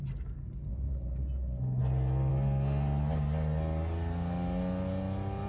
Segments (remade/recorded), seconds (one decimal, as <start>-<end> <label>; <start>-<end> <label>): 0.0-5.5 recorded

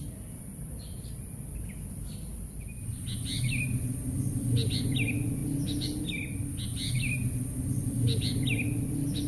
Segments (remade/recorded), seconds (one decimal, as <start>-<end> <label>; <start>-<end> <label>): 0.0-9.3 recorded